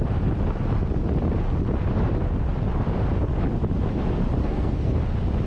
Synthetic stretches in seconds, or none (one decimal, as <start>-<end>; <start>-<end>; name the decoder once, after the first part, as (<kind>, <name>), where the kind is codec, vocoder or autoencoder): 4.4-5.0 (codec, SNAC)